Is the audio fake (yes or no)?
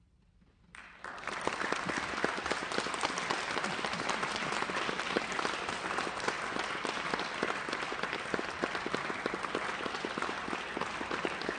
no